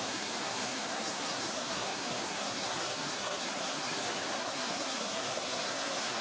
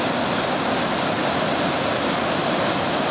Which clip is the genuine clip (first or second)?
second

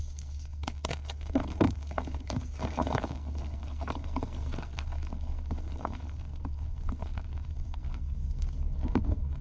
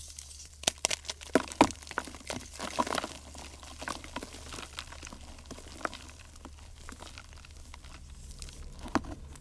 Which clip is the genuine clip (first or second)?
second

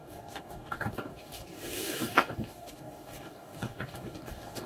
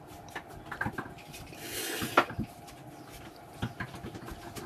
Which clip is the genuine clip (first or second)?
second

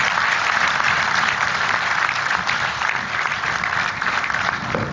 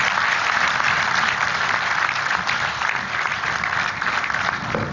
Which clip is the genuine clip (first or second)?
second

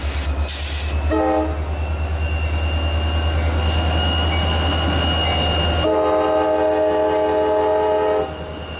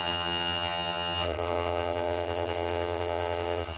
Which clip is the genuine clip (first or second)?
first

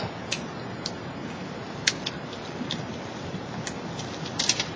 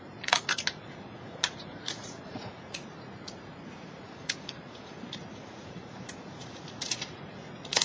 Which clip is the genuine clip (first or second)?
first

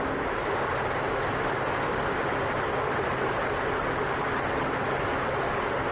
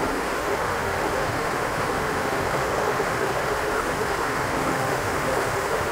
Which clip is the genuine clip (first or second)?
first